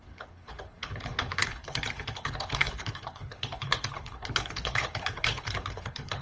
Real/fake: fake